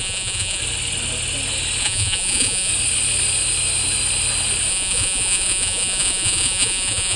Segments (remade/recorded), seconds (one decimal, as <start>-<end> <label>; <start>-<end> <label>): 0.0-0.6 remade; 0.6-1.8 recorded; 1.8-2.7 remade; 2.7-4.7 recorded; 4.7-7.2 remade